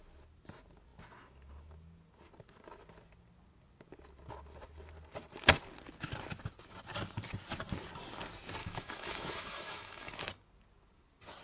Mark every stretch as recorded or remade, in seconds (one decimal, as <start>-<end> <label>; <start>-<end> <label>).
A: 0.0-8.6 recorded; 8.6-10.1 remade; 10.1-11.4 recorded